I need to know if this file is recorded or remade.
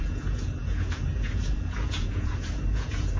remade